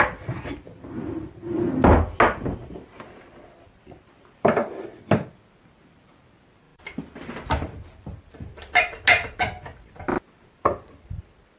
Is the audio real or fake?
real